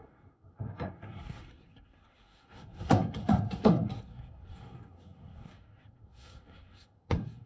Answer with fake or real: fake